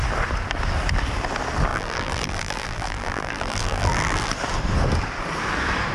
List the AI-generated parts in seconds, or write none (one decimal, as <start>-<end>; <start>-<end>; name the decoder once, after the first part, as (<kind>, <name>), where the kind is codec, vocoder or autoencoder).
1.7-4.3 (vocoder, BigVGAN v2)